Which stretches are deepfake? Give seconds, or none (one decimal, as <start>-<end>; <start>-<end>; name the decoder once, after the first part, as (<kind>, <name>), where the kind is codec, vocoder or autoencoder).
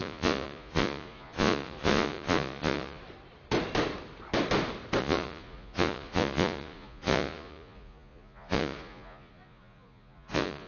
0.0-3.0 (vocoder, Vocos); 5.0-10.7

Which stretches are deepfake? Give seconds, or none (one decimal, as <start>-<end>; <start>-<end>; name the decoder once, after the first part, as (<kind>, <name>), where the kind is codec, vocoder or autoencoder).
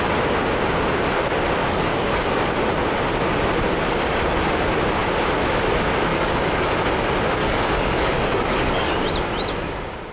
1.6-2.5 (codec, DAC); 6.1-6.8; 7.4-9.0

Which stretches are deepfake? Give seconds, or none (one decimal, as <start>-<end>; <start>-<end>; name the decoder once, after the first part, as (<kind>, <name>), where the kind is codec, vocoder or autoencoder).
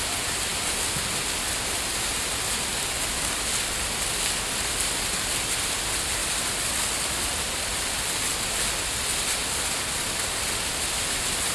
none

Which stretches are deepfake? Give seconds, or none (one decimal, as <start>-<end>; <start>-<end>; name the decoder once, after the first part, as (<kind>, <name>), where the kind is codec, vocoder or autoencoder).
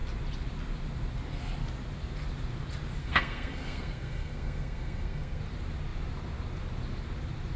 3.0-5.4 (codec, SNAC)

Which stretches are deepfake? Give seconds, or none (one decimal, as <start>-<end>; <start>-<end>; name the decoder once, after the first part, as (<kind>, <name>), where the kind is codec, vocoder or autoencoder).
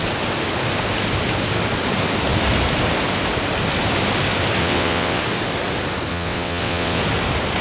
4.6-5.2 (vocoder, WaveNeXt); 6.1-7.0